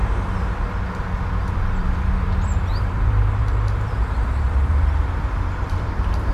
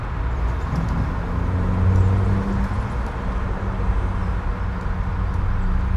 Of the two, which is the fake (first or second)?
first